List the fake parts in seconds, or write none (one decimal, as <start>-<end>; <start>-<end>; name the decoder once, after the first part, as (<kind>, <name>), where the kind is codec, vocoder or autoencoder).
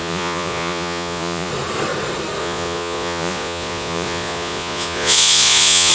0.0-1.5 (vocoder, Vocos); 2.4-5.9